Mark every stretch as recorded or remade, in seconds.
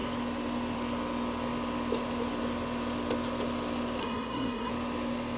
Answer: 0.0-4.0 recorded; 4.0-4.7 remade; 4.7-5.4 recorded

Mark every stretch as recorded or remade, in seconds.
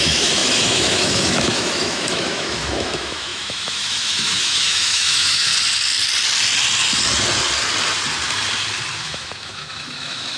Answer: 0.0-5.5 remade; 5.5-9.0 recorded; 9.0-10.4 remade